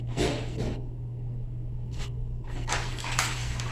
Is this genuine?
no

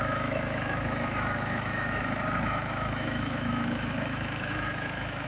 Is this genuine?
no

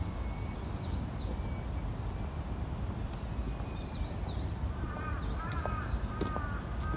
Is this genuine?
yes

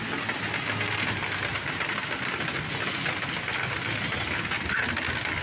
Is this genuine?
yes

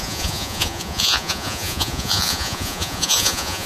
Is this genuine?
no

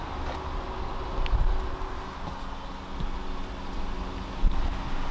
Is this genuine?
yes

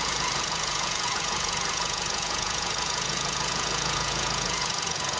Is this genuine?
no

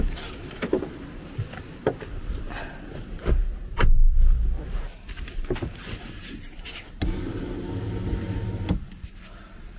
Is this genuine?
yes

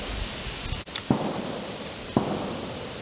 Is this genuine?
yes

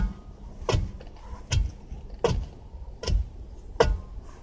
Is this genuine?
yes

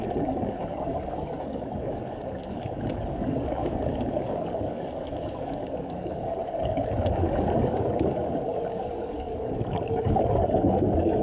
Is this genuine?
no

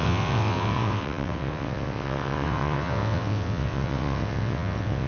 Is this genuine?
no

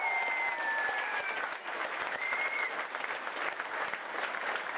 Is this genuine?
yes